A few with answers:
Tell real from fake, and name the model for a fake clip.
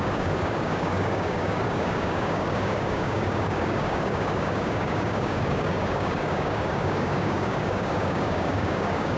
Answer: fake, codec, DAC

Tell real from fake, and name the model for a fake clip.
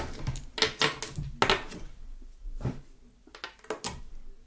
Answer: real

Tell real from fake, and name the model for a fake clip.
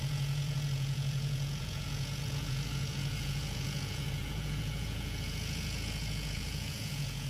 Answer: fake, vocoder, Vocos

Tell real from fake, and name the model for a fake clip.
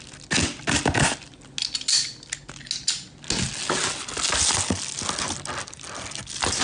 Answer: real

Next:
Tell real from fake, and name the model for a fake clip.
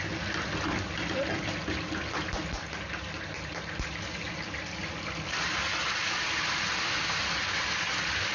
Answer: real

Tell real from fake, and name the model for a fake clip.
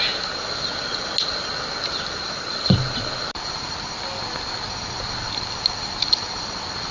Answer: real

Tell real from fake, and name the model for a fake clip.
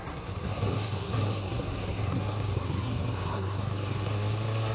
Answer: fake, codec, SNAC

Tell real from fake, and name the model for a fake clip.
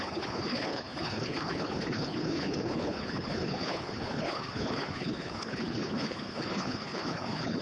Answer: fake, codec, HILCodec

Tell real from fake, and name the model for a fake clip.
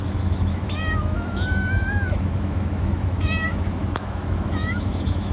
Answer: fake, autoencoder, DAC-VAE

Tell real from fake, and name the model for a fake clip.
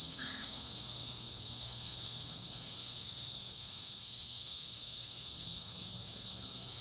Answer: fake, codec, SNAC